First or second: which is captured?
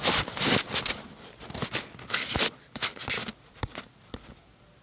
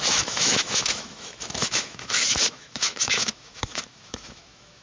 first